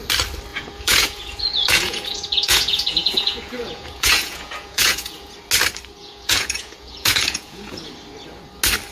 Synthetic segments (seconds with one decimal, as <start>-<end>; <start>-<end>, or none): 0.5-5.3; 6.0-7.9